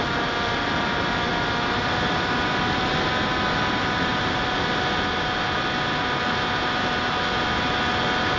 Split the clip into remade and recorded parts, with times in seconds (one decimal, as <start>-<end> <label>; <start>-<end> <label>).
0.0-8.4 recorded